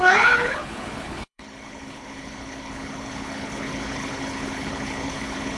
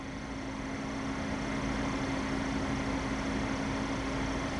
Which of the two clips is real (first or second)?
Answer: second